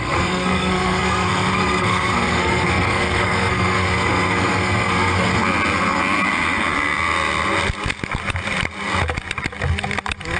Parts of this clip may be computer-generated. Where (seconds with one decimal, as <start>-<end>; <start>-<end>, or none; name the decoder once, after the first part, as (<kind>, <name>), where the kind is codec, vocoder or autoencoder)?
0.0-5.3 (codec, SNAC)